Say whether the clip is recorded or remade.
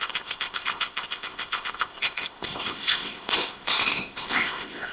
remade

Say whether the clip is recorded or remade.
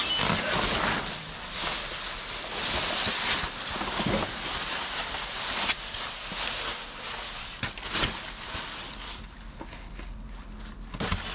recorded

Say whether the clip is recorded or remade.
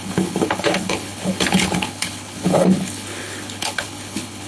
remade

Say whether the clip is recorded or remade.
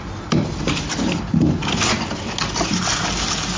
recorded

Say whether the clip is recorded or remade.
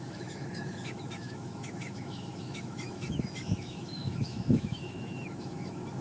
remade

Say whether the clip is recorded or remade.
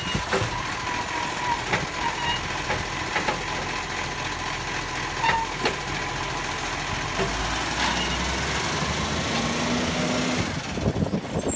recorded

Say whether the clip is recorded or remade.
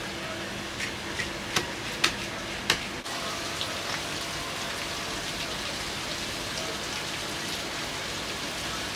recorded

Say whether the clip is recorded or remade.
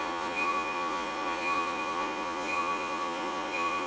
remade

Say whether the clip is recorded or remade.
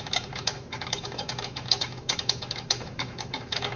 remade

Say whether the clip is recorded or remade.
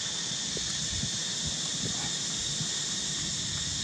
recorded